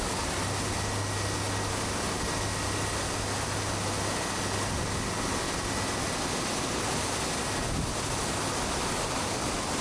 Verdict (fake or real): real